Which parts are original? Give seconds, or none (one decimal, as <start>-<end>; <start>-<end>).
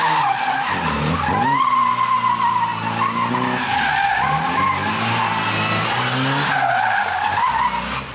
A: 0.0-8.1